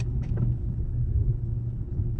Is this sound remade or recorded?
remade